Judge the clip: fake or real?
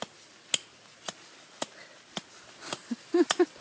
real